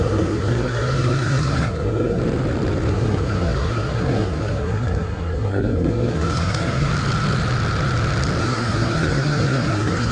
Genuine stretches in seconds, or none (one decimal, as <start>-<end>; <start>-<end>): 2.2-2.9; 6.9-8.4